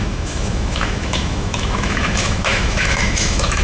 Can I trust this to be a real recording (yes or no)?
no